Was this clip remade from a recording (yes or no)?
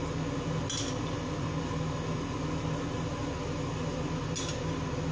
no